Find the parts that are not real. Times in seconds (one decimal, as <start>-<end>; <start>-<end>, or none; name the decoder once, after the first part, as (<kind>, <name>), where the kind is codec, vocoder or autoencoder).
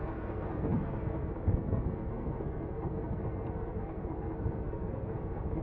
0.0-5.6 (codec, SNAC)